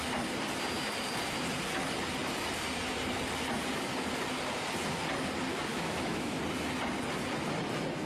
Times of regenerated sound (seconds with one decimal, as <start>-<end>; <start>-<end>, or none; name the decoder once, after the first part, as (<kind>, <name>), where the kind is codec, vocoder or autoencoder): 5.7-6.4 (autoencoder, DAC-VAE)